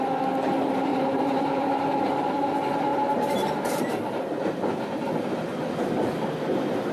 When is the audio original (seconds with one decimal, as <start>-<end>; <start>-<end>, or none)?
0.0-0.9; 2.4-2.9; 3.8-6.9